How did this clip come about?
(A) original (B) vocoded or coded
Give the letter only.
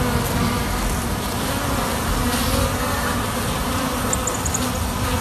A